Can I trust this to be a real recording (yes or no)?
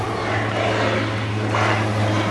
yes